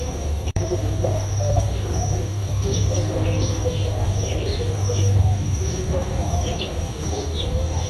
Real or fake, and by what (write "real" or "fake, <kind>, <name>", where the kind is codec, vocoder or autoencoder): fake, codec, DAC